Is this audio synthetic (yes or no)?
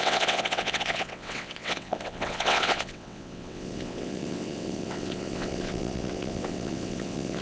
yes